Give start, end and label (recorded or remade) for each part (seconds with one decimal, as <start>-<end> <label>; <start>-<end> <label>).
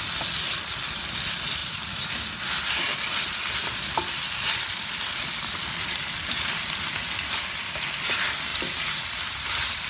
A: 0.0-9.9 recorded